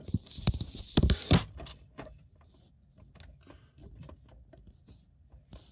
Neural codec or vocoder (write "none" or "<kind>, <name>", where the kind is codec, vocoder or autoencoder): none